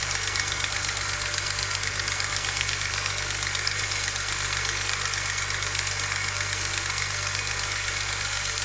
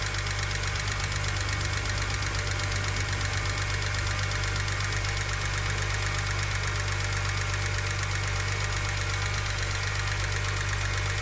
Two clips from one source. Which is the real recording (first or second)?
second